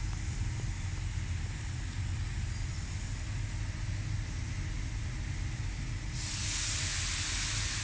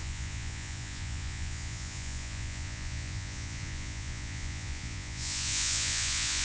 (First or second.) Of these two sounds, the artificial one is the second